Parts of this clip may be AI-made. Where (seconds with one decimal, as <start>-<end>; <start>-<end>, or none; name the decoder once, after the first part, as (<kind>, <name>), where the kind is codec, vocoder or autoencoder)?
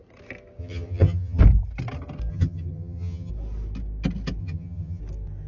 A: 0.6-1.4 (vocoder, HiFi-GAN); 2.3-3.3; 4.4-5.0